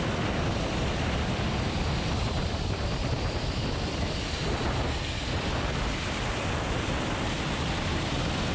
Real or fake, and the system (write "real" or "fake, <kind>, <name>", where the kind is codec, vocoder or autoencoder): real